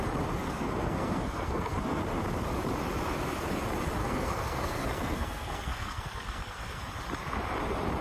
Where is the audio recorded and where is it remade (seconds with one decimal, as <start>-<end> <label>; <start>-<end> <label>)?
0.0-0.4 recorded; 0.4-2.0 remade; 2.0-4.0 recorded; 4.0-6.8 remade; 6.8-8.0 recorded